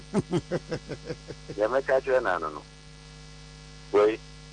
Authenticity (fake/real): real